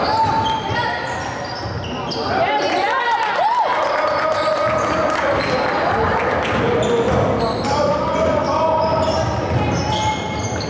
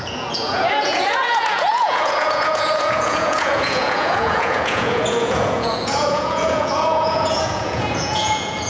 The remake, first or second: second